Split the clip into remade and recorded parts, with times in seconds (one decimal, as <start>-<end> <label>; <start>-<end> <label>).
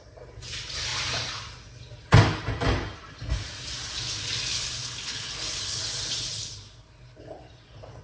0.0-4.5 recorded; 4.5-5.8 remade; 5.8-6.4 recorded; 6.4-7.2 remade; 7.2-8.0 recorded